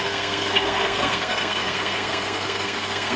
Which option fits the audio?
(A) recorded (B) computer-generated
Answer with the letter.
B